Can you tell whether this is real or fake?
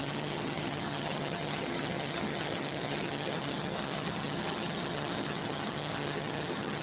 fake